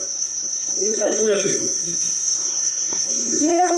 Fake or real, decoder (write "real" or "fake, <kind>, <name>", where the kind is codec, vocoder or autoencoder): fake, codec, SNAC